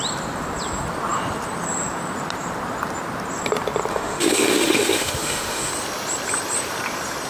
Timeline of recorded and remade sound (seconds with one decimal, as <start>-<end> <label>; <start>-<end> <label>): 0.0-3.9 recorded; 3.9-5.7 remade; 5.7-7.3 recorded